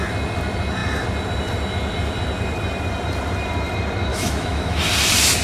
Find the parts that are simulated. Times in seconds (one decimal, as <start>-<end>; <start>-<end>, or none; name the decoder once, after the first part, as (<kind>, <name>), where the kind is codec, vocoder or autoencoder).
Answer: 4.1-4.8 (autoencoder, DAC-VAE)